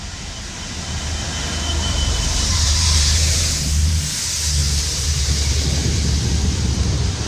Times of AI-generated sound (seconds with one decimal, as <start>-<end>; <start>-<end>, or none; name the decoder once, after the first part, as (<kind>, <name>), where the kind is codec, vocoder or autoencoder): 1.4-4.0 (vocoder, BigVGAN v2); 4.6-5.1